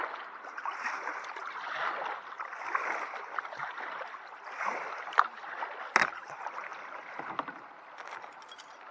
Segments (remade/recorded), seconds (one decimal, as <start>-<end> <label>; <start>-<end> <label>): 0.0-6.7 recorded; 6.7-7.2 remade; 7.2-8.9 recorded